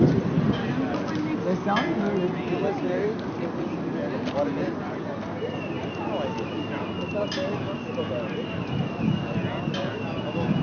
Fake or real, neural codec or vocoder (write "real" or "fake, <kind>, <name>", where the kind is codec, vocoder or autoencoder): real